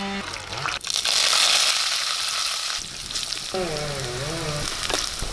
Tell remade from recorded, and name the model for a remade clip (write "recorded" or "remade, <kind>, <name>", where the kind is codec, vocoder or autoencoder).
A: recorded